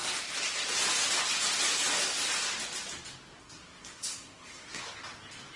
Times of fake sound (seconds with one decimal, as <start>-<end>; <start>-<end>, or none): 3.4-4.8